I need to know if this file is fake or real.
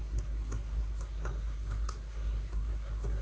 fake